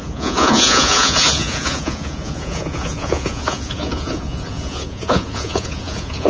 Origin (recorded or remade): remade